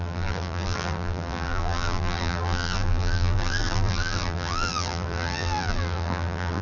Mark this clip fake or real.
fake